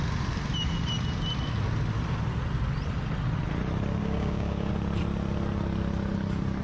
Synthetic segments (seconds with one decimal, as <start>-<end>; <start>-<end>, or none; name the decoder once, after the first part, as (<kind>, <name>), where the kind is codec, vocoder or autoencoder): 4.0-4.7 (codec, DAC)